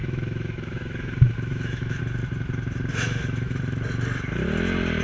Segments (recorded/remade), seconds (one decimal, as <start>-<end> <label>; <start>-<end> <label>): 0.0-2.0 remade; 2.0-2.9 recorded; 2.9-3.6 remade; 3.6-5.0 recorded